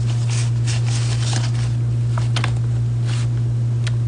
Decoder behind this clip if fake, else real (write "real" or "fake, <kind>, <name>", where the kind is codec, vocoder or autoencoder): real